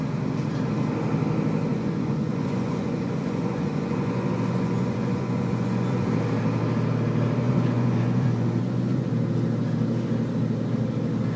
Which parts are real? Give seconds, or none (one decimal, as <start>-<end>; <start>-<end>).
0.0-1.7; 6.1-7.4; 9.1-11.4